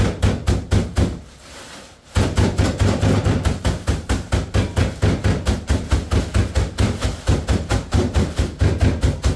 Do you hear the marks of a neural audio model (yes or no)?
yes